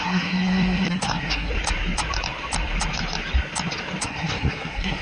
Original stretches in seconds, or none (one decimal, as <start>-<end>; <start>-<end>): 1.5-4.0